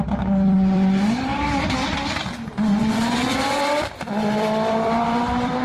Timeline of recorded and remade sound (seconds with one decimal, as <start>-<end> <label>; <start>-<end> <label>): 0.0-1.3 remade; 1.3-2.8 recorded; 2.8-5.6 remade